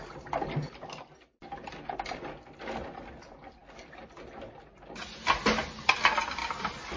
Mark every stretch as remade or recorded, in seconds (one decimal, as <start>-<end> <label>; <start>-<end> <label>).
0.0-7.0 recorded